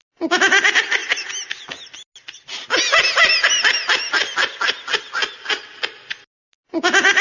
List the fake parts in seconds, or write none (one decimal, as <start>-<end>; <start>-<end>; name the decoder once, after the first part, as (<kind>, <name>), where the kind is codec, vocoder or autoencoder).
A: none